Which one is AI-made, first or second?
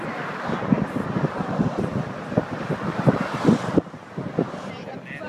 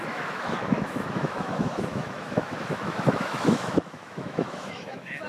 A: second